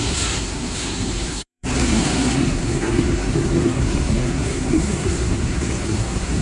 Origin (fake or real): fake